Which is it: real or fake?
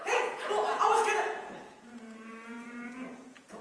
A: fake